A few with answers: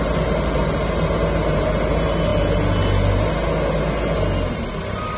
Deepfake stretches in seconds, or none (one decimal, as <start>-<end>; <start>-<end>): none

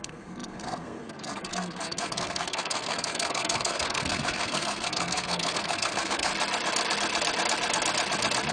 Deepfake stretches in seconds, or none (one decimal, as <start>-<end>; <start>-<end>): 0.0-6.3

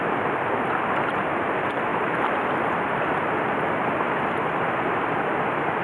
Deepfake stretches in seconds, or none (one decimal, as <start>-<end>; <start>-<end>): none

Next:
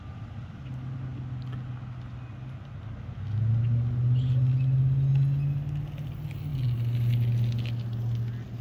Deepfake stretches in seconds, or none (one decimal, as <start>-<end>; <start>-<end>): none

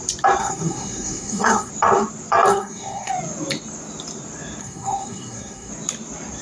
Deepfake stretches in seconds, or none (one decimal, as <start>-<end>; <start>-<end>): 0.4-1.7; 2.5-3.1; 4.6-5.7

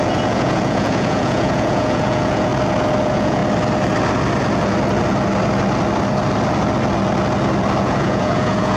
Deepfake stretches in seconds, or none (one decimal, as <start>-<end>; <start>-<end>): 0.0-2.5; 3.0-3.4; 7.8-8.8

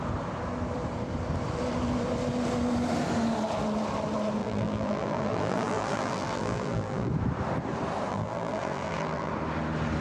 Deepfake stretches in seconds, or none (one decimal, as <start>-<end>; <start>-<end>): 4.4-7.1; 8.1-9.3

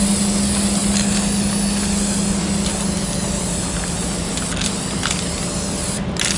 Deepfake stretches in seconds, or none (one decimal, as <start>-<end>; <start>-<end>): none